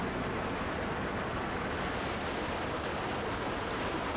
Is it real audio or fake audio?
real